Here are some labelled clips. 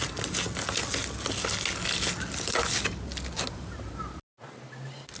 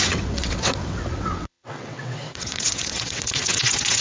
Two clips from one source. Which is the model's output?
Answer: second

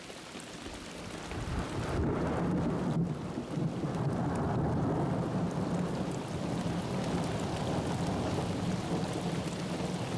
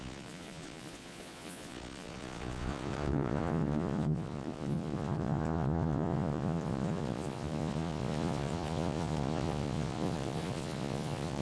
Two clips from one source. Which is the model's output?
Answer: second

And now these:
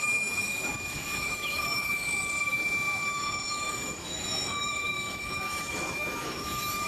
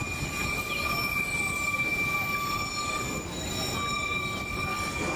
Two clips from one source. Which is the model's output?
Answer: first